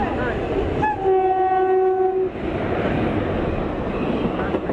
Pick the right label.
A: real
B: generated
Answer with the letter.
A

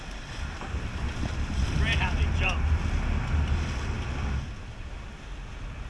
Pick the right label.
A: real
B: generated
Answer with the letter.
A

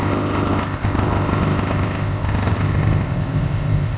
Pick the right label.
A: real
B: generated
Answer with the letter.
B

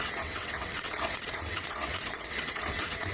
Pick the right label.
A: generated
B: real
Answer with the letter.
A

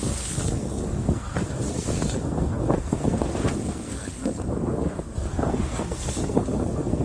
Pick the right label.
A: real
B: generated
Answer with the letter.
B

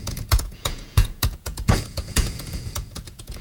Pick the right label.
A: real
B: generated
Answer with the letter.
B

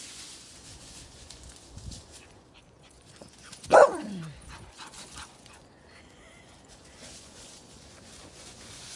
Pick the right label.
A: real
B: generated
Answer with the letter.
B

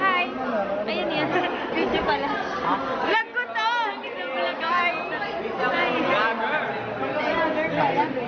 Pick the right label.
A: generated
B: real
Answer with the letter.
B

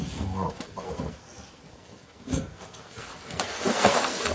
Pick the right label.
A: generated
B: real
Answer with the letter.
A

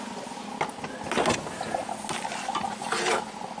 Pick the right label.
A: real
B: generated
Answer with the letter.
A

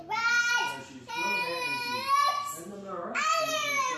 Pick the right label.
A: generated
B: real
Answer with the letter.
B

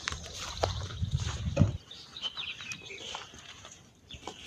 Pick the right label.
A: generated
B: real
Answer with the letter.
A